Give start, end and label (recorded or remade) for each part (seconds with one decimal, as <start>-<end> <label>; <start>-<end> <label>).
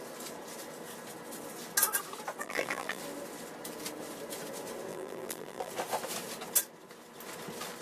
0.0-2.4 recorded; 2.4-3.0 remade; 3.0-4.9 recorded; 4.9-5.7 remade; 5.7-7.8 recorded